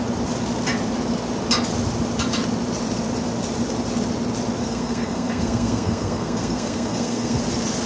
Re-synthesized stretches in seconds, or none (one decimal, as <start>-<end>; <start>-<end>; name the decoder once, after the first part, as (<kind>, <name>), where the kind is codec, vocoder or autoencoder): 4.6-7.4 (codec, SNAC)